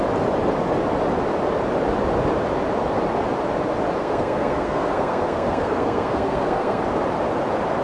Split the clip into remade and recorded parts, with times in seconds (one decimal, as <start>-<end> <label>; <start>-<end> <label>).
0.0-4.0 recorded; 4.0-6.8 remade; 6.8-7.8 recorded